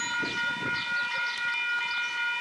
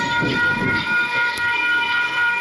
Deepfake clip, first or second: second